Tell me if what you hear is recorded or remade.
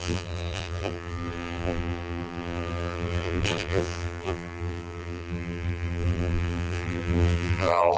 remade